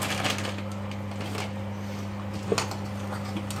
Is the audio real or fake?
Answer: real